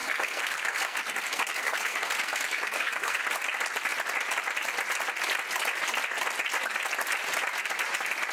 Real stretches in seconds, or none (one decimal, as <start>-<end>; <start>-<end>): 3.3-8.3